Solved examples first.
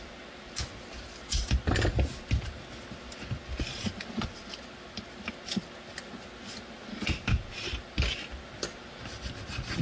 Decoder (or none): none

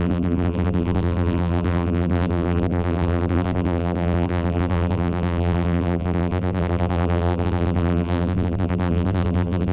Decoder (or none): vocoder, BigVGAN v2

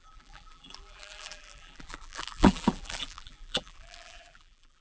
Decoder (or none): vocoder, BigVGAN v2